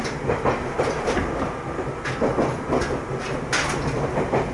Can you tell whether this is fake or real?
real